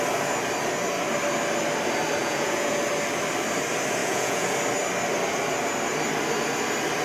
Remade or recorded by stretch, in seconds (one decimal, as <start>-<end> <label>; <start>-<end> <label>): 0.0-2.2 recorded; 2.2-2.8 remade; 2.8-4.0 recorded; 4.0-4.5 remade; 4.5-7.0 recorded